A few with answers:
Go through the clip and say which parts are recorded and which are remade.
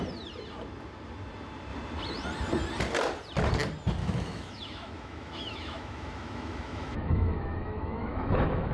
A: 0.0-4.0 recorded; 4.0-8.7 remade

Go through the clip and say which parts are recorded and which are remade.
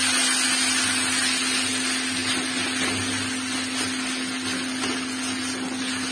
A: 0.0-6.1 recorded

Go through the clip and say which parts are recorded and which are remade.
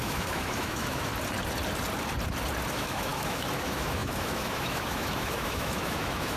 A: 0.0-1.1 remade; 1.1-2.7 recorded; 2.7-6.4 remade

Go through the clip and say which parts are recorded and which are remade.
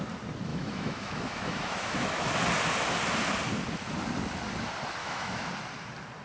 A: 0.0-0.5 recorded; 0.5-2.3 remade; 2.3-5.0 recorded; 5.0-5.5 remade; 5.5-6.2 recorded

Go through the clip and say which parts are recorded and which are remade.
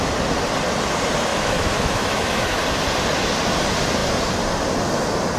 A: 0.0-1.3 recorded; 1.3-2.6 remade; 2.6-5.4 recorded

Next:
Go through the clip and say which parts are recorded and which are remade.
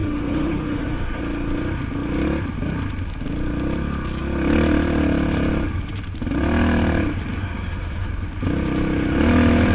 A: 0.0-1.2 remade; 1.2-7.4 recorded; 7.4-8.1 remade; 8.1-9.7 recorded